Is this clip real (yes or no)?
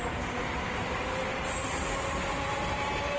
yes